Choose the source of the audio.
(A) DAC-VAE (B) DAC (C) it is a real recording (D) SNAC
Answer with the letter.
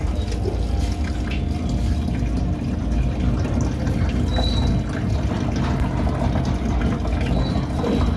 C